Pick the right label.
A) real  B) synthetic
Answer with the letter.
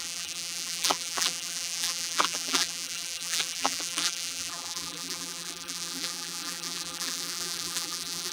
B